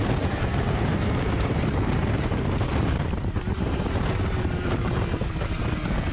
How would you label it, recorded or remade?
remade